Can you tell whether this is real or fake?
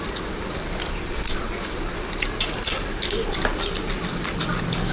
real